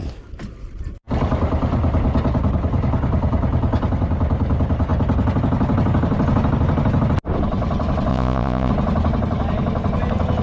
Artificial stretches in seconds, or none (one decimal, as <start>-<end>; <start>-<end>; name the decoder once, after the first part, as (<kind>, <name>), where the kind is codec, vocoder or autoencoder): 8.1-8.7 (vocoder, Vocos)